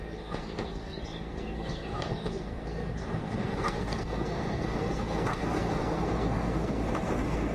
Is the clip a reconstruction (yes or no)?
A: yes